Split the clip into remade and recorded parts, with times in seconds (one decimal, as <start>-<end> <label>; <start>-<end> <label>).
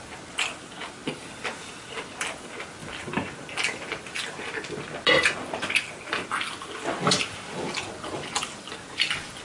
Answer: 0.0-9.4 recorded